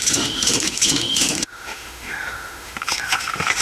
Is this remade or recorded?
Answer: remade